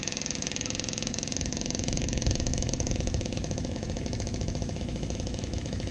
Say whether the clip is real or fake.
fake